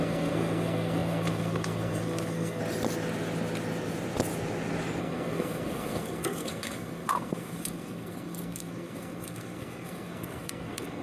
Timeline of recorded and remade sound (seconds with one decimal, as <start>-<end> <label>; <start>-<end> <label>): 0.0-2.6 remade; 2.6-5.0 recorded; 5.0-11.0 remade